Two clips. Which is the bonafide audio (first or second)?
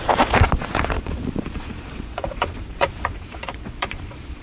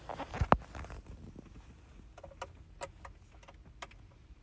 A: second